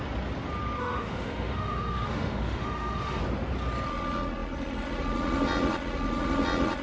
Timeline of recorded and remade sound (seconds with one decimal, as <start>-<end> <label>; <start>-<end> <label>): 0.0-0.8 recorded; 0.8-3.2 remade; 3.2-6.8 recorded